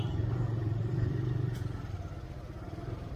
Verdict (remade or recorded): remade